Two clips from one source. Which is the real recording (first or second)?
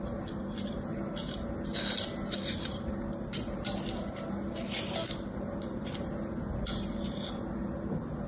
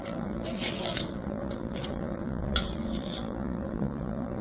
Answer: first